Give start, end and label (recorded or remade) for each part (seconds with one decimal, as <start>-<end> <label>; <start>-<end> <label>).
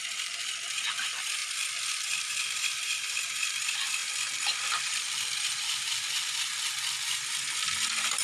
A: 0.0-8.2 remade